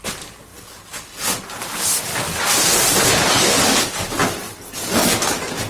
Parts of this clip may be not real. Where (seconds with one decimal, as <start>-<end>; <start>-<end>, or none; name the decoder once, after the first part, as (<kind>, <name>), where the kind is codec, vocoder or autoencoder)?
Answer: none